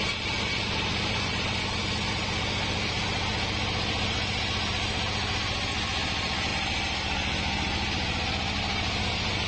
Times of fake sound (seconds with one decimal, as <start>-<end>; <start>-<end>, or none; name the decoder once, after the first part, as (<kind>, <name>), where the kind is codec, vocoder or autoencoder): none